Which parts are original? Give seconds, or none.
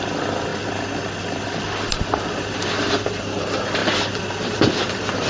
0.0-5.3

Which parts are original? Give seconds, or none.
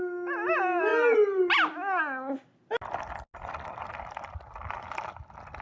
0.0-5.6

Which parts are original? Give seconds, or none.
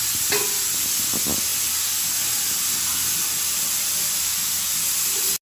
0.0-5.4